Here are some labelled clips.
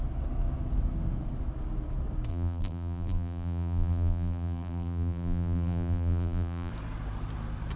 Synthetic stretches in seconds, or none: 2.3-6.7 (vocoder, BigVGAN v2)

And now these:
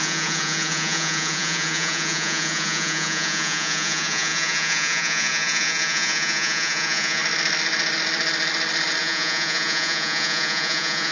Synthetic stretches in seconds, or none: 0.0-7.2 (vocoder, Vocos); 9.0-11.1

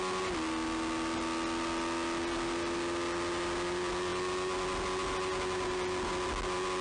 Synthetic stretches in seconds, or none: none

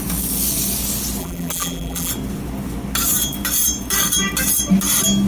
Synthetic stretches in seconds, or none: 1.2-2.1 (vocoder, BigVGAN v2)

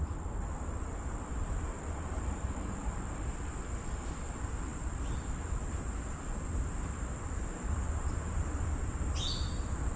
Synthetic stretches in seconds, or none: none

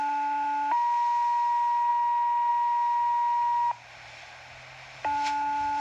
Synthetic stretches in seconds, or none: none

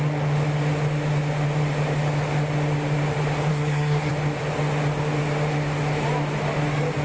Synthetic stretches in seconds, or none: 3.5-4.1 (codec, SNAC)

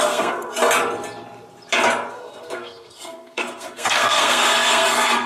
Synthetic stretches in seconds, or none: 0.0-0.5 (codec, SNAC); 2.1-5.3